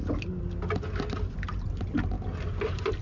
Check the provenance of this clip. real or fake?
real